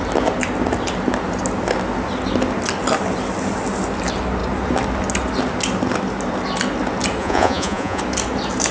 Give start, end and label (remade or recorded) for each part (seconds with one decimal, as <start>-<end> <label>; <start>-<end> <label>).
0.0-7.2 recorded; 7.2-8.0 remade; 8.0-8.7 recorded